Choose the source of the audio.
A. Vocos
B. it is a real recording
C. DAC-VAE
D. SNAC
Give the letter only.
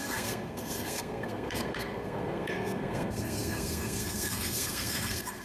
D